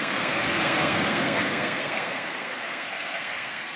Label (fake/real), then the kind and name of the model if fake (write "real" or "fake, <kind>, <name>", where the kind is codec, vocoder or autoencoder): fake, codec, SNAC